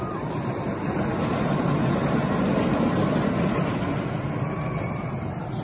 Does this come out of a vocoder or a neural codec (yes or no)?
no